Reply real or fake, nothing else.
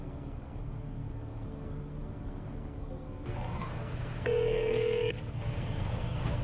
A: fake